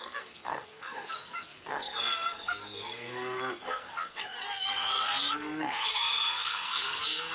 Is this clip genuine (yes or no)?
no